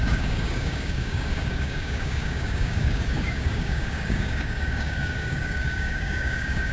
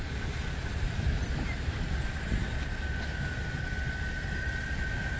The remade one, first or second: first